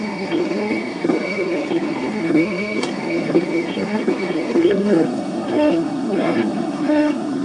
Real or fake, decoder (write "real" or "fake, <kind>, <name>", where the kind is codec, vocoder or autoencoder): fake, codec, SNAC